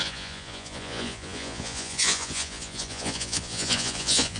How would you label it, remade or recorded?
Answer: remade